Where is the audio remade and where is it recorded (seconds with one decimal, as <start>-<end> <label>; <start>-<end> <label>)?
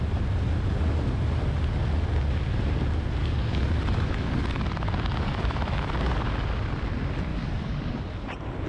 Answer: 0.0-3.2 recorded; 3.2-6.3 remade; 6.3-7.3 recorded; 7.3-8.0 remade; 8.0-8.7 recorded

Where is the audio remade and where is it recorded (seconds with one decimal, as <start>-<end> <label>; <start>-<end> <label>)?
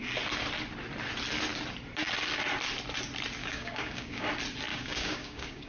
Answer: 0.0-3.4 recorded; 3.4-4.3 remade; 4.3-4.7 recorded; 4.7-5.7 remade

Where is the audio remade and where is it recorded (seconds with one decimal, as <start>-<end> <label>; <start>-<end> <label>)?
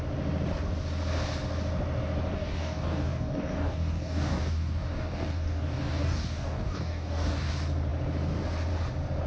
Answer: 0.0-2.3 recorded; 2.3-7.5 remade; 7.5-9.3 recorded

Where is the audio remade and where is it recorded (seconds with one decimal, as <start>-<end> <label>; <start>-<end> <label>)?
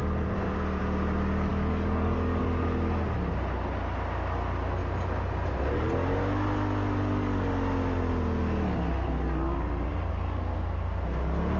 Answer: 0.0-1.5 recorded; 1.5-2.4 remade; 2.4-11.6 recorded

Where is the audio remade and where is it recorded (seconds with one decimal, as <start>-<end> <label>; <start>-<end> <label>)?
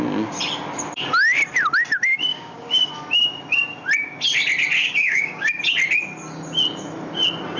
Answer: 0.0-2.3 recorded; 2.3-2.9 remade; 2.9-4.8 recorded; 4.8-5.6 remade; 5.6-7.6 recorded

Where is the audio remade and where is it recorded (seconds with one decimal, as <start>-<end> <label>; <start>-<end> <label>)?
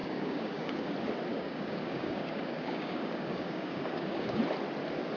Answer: 0.0-0.9 remade; 0.9-1.3 recorded; 1.3-4.4 remade; 4.4-5.2 recorded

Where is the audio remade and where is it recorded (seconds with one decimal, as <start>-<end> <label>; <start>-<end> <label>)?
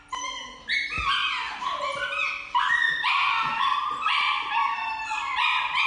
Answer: 0.0-5.9 recorded